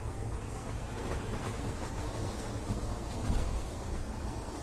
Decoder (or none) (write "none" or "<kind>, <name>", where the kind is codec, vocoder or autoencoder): codec, SNAC